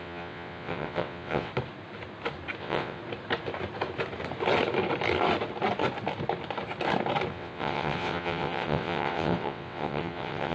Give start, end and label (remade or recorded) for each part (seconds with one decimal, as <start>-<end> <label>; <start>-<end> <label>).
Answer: 0.0-1.5 remade; 1.5-2.6 recorded; 2.6-3.0 remade; 3.0-7.3 recorded; 7.3-10.5 remade